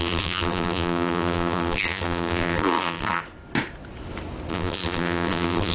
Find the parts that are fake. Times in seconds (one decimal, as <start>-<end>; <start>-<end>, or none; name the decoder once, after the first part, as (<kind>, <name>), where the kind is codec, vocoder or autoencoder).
0.0-3.2 (vocoder, BigVGAN v2); 4.5-5.7

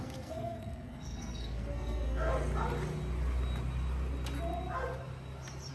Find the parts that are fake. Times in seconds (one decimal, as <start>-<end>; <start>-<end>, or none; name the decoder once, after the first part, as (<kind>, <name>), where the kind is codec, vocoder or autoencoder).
0.0-2.3 (codec, SNAC)